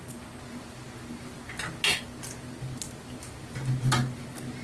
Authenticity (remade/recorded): recorded